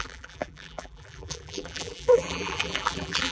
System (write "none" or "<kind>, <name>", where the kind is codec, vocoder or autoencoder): vocoder, BigVGAN v2